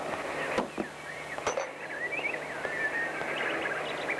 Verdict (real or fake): real